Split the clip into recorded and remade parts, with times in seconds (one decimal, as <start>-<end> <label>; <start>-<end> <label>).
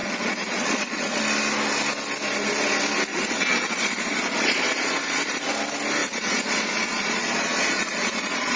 0.0-1.2 remade; 1.2-3.1 recorded; 3.1-5.5 remade; 5.5-6.0 recorded; 6.0-8.6 remade